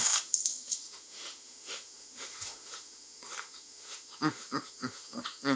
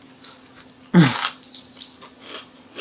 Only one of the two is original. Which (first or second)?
second